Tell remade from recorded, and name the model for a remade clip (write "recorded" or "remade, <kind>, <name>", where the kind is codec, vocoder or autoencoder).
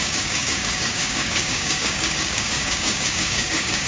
remade, codec, DAC